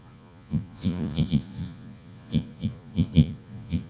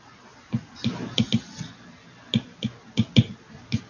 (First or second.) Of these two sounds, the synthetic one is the first